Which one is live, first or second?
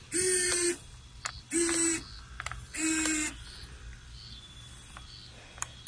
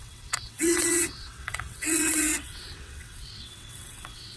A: first